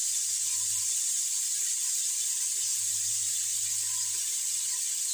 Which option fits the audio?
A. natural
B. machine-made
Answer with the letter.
A